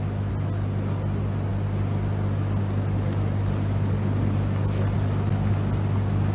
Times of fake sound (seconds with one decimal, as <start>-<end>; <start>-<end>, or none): none